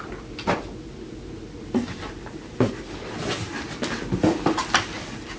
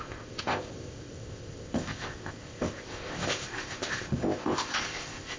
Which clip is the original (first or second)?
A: first